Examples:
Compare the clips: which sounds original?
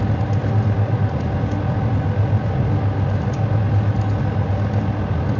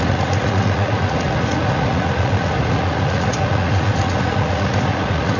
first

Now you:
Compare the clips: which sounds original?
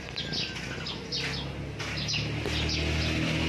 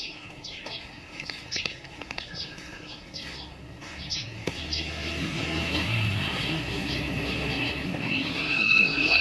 first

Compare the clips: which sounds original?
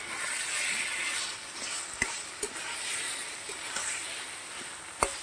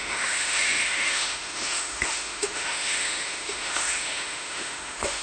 first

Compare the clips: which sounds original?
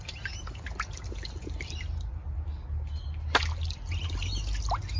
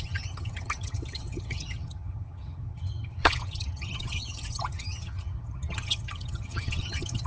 first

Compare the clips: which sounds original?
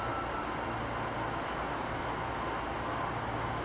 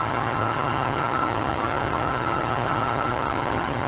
first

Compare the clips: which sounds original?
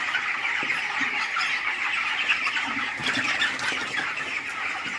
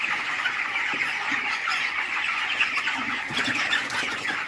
first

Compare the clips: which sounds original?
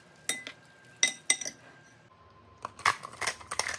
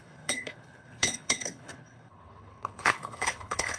first